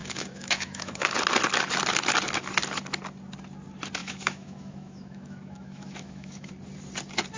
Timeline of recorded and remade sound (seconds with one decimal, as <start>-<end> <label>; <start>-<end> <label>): 0.0-1.1 remade; 1.1-4.0 recorded; 4.0-6.5 remade; 6.5-7.4 recorded